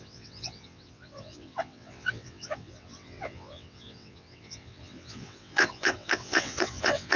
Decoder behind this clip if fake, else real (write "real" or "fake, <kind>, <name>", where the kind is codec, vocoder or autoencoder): fake, vocoder, WaveNeXt